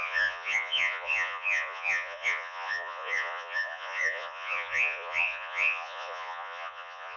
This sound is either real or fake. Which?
fake